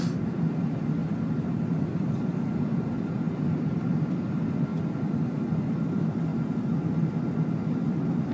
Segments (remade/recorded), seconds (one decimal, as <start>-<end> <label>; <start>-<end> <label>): 0.0-4.7 remade; 4.7-5.7 recorded; 5.7-6.3 remade; 6.3-7.7 recorded; 7.7-8.3 remade